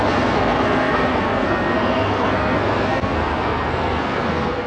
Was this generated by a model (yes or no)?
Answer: yes